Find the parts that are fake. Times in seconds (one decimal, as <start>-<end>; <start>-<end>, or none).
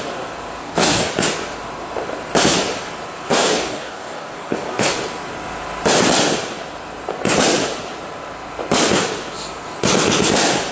0.6-1.1; 3.3-4.9